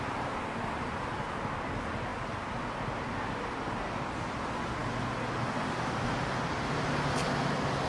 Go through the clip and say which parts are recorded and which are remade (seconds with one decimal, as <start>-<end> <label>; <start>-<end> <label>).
0.0-7.9 recorded